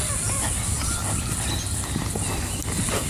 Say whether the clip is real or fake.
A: real